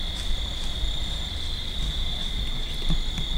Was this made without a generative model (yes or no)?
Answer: yes